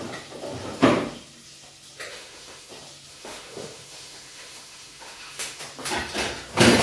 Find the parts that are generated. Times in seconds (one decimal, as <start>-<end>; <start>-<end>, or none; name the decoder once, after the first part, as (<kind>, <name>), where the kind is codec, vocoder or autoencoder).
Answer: 2.1-2.7 (autoencoder, DAC-VAE); 3.1-5.6